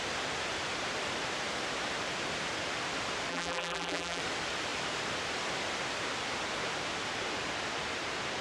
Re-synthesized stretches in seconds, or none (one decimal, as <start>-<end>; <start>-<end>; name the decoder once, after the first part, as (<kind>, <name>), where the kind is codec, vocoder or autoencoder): 3.3-4.2 (vocoder, BigVGAN v2)